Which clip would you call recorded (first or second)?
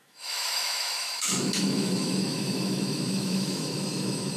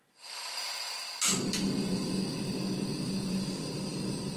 second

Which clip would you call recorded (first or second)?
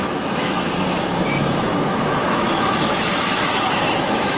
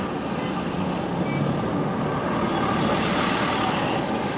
second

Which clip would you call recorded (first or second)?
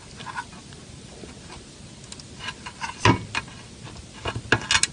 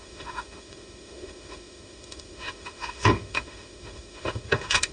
first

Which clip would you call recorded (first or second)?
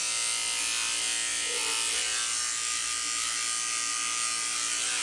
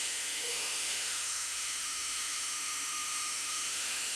first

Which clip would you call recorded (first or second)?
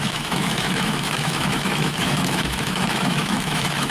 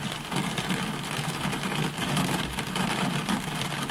second